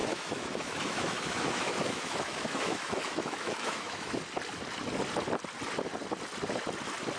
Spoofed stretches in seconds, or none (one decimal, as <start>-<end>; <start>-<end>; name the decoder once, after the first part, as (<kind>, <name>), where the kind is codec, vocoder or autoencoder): 0.0-4.2 (autoencoder, DAC-VAE)